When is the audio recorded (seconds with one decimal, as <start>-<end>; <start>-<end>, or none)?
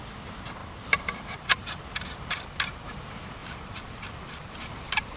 0.0-0.6; 1.8-3.4